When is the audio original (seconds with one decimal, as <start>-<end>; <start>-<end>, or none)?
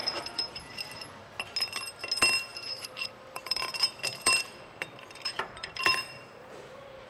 0.7-2.5